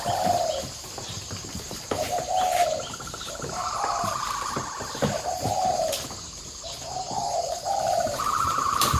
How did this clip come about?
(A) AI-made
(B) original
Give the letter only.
A